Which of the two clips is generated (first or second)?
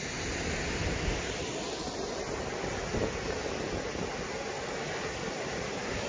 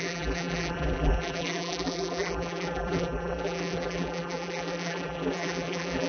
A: second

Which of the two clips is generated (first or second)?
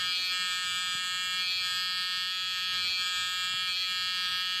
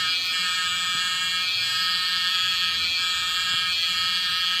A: second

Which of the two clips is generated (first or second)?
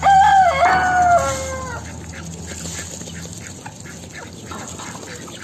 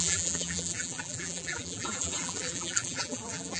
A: second